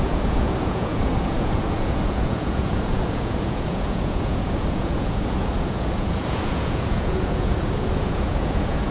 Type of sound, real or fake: fake